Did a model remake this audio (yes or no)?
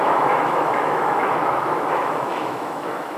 yes